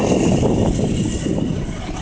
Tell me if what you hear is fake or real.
real